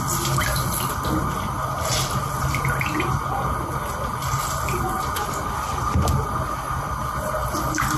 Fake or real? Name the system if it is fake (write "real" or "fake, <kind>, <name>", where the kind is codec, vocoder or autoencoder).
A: real